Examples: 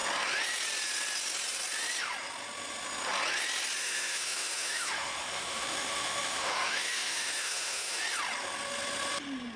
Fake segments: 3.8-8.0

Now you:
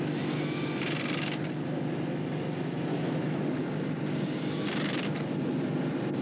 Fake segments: 2.9-3.4

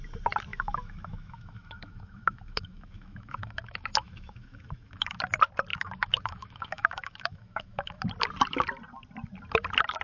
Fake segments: 0.5-5.2; 5.7-8.0

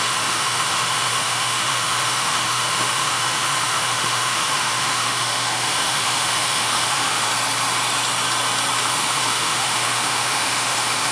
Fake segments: 0.0-7.3; 8.8-11.1